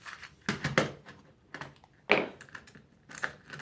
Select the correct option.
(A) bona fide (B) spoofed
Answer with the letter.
A